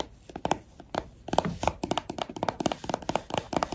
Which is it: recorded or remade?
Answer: recorded